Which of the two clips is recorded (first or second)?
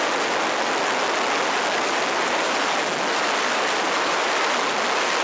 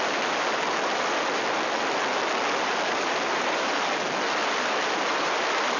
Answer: first